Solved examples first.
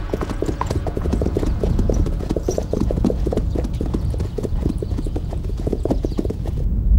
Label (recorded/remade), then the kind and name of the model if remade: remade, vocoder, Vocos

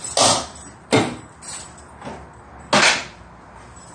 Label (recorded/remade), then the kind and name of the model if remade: recorded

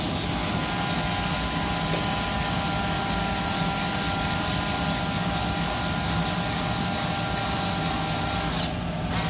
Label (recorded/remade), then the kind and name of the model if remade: recorded